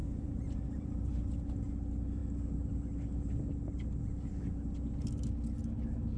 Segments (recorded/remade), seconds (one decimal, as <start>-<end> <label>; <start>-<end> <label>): 0.0-1.2 remade; 1.2-6.2 recorded